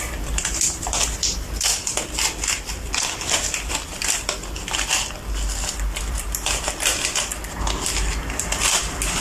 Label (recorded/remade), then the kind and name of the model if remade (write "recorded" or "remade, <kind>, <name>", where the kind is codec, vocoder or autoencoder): remade, vocoder, BigVGAN v2